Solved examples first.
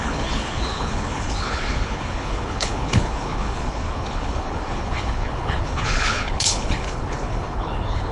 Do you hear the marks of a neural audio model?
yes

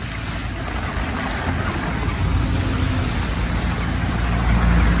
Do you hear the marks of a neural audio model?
no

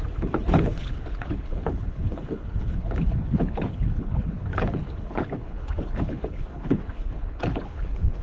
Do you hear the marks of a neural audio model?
yes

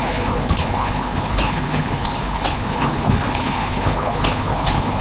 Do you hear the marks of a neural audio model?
yes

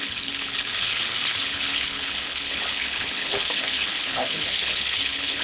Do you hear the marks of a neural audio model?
yes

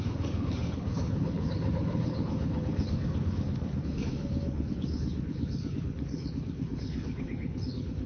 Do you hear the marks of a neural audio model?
yes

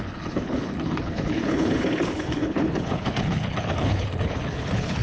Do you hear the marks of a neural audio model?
yes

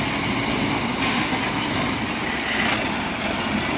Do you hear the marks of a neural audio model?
no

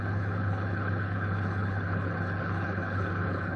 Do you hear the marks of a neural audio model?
yes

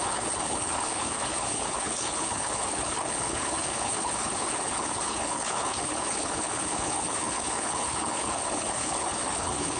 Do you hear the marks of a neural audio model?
yes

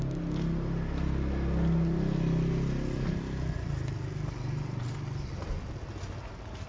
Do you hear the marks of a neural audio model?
no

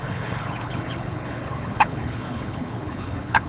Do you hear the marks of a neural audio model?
yes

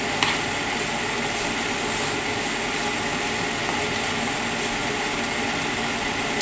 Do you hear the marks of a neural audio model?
no